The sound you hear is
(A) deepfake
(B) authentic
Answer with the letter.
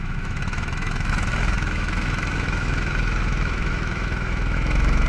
A